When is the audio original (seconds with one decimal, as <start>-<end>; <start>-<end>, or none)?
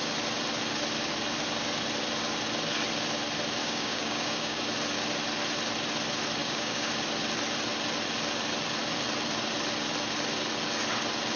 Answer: 0.0-3.6; 4.6-6.4; 6.9-11.4